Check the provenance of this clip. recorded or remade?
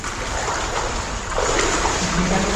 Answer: remade